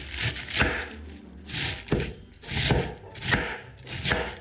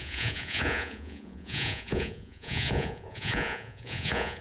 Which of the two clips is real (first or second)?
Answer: first